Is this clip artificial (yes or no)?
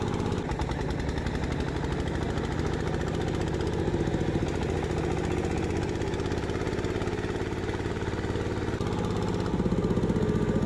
no